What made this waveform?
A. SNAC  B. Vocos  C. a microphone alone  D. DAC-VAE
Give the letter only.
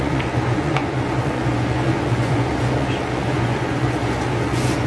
B